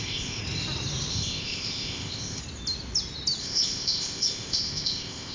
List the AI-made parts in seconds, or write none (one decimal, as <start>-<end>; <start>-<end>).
0.0-0.4; 1.1-2.4; 3.4-5.3